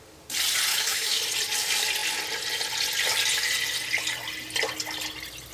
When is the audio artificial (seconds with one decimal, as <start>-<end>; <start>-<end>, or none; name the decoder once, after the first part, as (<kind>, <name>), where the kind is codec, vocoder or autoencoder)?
0.7-1.2 (autoencoder, DAC-VAE)